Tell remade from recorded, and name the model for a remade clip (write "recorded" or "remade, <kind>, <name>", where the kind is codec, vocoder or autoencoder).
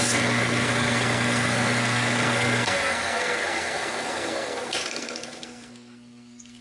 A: remade, codec, SNAC